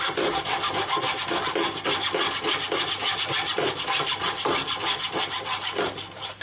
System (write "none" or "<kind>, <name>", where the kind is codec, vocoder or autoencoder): none